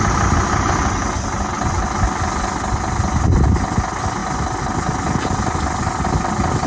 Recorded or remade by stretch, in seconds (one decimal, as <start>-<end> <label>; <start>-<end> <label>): 0.0-6.7 recorded